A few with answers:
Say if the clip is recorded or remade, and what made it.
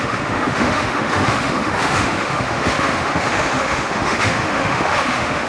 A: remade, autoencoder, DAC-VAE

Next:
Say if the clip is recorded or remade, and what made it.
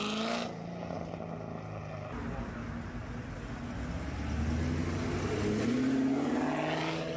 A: recorded